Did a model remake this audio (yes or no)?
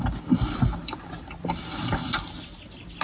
no